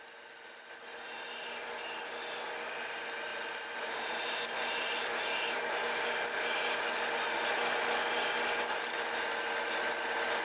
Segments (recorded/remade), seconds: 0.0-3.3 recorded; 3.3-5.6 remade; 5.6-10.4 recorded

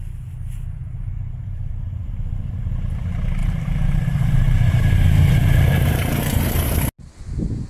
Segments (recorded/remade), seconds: 0.0-0.8 recorded; 0.8-2.7 remade; 2.7-3.4 recorded; 3.4-6.8 remade; 6.8-7.7 recorded

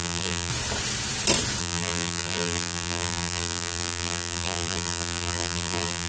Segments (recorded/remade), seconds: 0.0-0.5 remade; 0.5-1.6 recorded; 1.6-6.1 remade

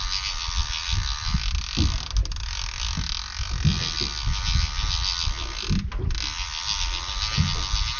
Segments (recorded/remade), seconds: 0.0-8.0 recorded